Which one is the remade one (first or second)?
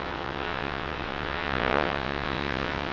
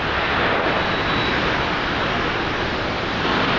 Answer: first